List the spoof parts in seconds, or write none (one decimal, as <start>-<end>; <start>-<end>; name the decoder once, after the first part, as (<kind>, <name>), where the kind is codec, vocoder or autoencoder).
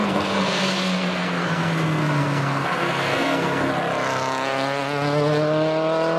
0.0-3.7 (codec, SNAC)